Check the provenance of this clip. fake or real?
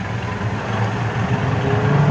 real